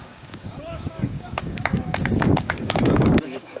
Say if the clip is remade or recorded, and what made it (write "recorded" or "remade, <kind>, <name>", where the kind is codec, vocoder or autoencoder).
remade, codec, DAC